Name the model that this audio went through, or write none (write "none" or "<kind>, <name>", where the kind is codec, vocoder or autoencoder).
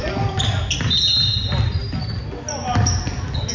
none